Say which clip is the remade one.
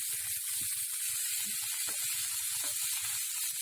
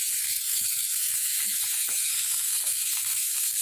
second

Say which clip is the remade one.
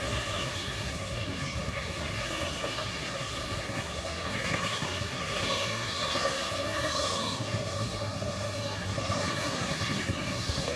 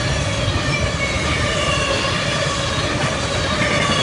first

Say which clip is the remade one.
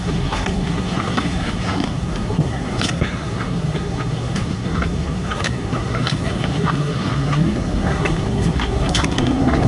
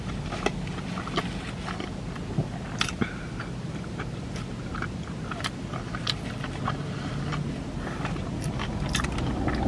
first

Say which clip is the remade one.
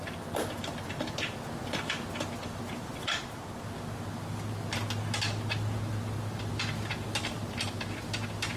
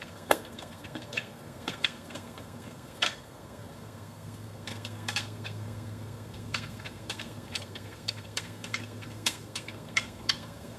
second